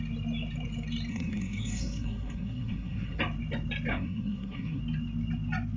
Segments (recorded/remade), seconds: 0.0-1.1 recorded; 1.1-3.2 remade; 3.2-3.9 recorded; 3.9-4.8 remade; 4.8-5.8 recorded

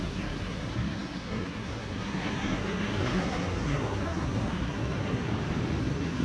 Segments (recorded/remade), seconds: 0.0-5.3 remade; 5.3-5.8 recorded; 5.8-6.2 remade

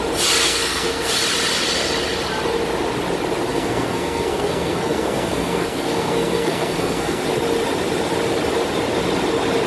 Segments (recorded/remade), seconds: 0.0-0.4 recorded; 0.4-1.1 remade; 1.1-3.5 recorded; 3.5-7.2 remade; 7.2-9.7 recorded

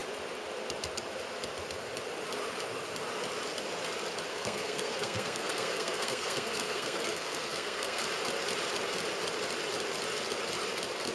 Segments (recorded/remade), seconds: 0.0-4.3 recorded; 4.3-8.0 remade; 8.0-11.1 recorded

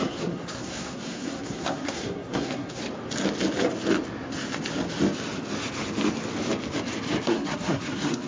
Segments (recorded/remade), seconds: 0.0-2.8 remade; 2.8-7.2 recorded; 7.2-8.3 remade

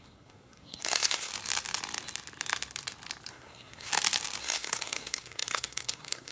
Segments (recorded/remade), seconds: 0.0-1.3 remade; 1.3-3.3 recorded; 3.3-3.9 remade; 3.9-4.4 recorded; 4.4-6.3 remade